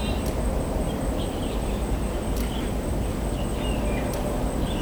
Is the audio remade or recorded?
recorded